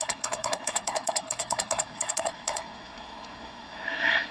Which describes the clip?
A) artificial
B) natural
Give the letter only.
A